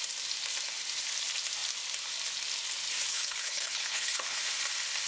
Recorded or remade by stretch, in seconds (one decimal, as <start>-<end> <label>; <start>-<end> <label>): 0.0-3.1 recorded; 3.1-4.4 remade; 4.4-5.1 recorded